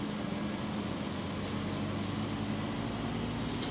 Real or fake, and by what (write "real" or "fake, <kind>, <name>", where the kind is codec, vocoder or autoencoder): real